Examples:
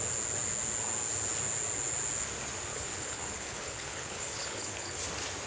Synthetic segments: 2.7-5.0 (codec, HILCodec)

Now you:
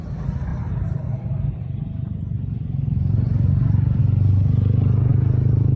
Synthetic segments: 0.5-4.0 (vocoder, BigVGAN v2)

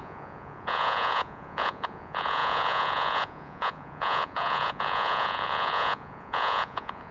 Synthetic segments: 0.0-7.1 (vocoder, Vocos)

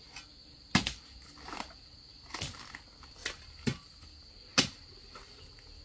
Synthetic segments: none